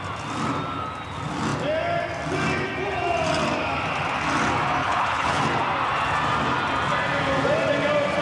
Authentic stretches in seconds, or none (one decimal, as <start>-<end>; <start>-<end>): 0.0-4.8; 5.4-8.2